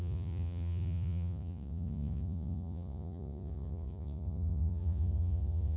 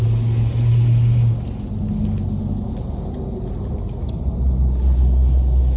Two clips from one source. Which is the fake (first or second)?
first